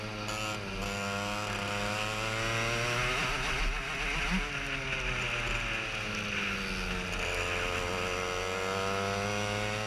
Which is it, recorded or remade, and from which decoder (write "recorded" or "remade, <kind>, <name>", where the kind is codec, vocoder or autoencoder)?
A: recorded